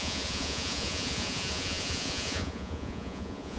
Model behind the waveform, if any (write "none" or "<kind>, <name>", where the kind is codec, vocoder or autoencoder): vocoder, Vocos